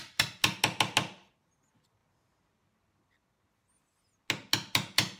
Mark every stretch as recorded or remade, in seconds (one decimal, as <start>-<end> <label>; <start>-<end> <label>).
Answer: 0.0-5.2 recorded